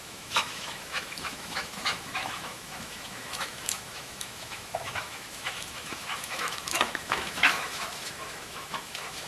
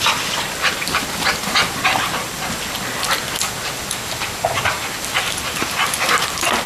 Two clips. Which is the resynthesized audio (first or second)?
first